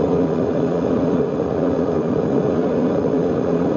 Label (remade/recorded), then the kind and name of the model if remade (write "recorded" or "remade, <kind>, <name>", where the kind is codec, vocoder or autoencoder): remade, vocoder, Vocos